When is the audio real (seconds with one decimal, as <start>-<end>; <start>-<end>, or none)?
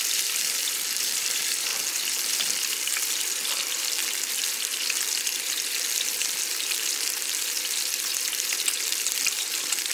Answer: 1.7-2.6; 4.0-8.1